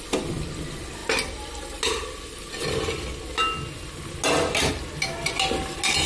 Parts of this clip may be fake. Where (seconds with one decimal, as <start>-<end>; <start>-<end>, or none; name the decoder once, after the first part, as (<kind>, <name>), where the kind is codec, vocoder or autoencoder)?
none